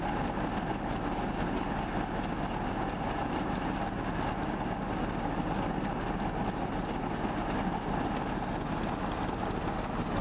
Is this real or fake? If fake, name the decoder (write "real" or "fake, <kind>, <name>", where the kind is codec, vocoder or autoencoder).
real